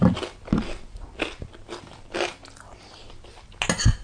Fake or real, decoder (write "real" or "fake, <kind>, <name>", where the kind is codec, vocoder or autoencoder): real